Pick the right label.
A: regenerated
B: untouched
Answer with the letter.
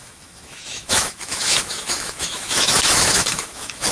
A